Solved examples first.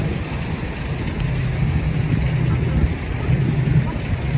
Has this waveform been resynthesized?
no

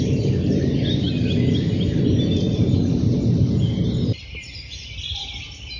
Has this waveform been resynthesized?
no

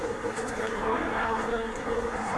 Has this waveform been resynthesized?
yes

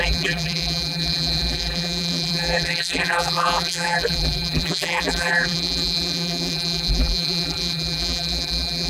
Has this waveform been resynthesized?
yes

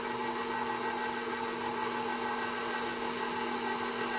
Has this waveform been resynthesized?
no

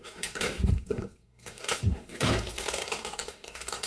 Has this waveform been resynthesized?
yes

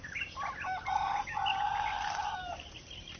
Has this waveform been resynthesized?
no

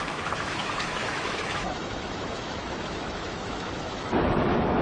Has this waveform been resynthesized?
yes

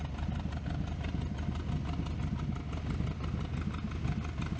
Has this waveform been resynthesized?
no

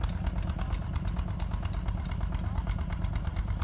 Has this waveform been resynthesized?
no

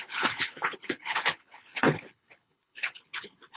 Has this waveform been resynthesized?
yes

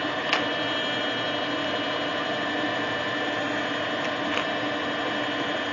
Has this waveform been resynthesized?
no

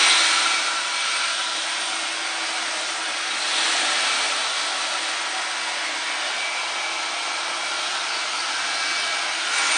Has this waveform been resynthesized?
no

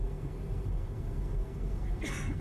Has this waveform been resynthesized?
yes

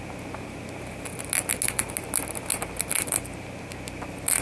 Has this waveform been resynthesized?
no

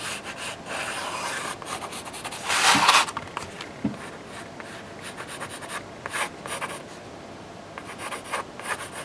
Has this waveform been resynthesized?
no